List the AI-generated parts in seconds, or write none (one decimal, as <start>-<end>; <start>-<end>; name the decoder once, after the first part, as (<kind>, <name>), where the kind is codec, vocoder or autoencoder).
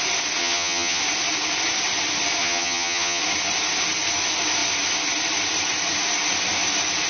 0.4-1.0 (vocoder, HiFi-GAN); 2.4-3.2